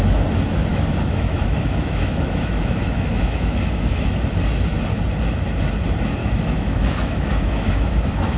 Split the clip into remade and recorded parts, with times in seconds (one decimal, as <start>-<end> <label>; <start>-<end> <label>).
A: 0.0-0.7 recorded; 0.7-4.1 remade; 4.1-6.2 recorded; 6.2-8.4 remade

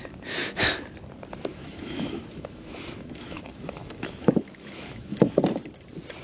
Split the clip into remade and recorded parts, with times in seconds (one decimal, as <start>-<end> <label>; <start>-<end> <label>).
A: 0.0-1.5 recorded; 1.5-5.2 remade; 5.2-6.2 recorded